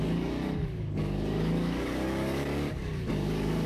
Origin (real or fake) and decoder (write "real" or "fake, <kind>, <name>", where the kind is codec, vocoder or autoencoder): fake, codec, DAC